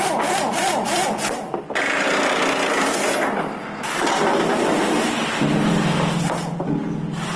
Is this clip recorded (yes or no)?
yes